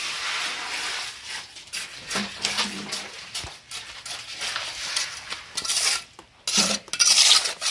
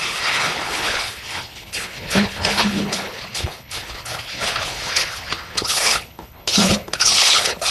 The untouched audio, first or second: first